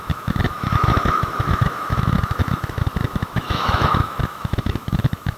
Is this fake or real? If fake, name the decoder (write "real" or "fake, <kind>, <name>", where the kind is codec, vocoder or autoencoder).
fake, autoencoder, DAC-VAE